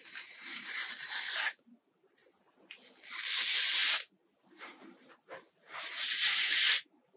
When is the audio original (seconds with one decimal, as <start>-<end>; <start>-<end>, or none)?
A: 0.8-1.3; 2.2-3.2; 3.8-4.4